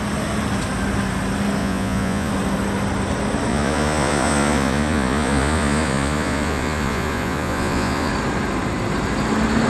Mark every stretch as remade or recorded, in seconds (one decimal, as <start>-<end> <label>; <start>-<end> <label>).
0.0-1.6 recorded; 1.6-2.3 remade; 2.3-3.5 recorded; 3.5-8.1 remade; 8.1-9.7 recorded